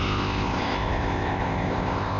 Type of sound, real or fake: fake